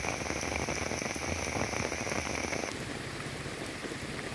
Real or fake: real